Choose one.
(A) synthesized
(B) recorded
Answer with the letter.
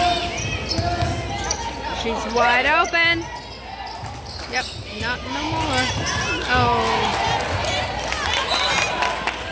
B